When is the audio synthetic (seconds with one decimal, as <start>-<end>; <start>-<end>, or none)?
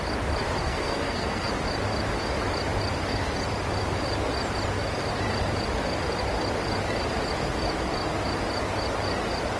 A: 0.6-1.5